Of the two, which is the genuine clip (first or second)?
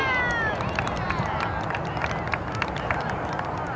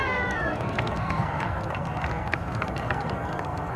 first